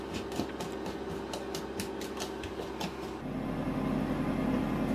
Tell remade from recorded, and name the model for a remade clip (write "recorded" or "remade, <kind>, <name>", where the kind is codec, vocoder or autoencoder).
recorded